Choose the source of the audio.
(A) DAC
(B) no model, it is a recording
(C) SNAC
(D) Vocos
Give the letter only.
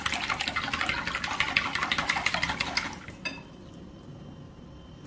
B